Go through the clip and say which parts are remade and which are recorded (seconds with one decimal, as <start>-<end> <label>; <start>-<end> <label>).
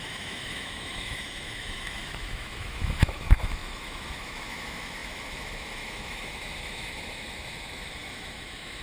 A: 0.0-8.8 remade